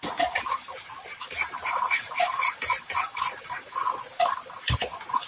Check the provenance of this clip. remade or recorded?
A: remade